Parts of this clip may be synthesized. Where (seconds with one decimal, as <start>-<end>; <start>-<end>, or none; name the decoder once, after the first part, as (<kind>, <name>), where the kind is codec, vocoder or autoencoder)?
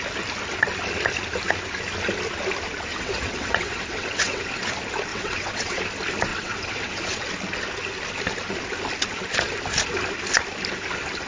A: 2.9-4.6 (vocoder, WaveNeXt); 5.1-5.8; 6.3-7.2